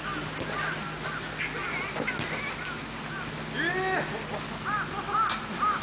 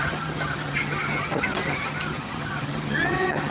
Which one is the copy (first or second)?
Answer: second